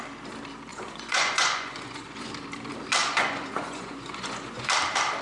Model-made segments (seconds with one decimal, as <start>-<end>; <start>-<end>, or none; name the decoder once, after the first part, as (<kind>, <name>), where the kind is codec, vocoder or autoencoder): 0.7-2.3 (vocoder, Vocos); 3.0-4.7